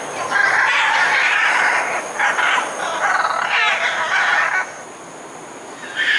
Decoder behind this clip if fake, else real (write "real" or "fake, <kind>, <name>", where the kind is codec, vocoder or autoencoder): real